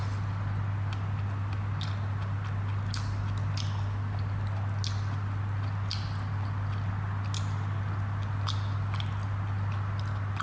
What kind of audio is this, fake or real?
real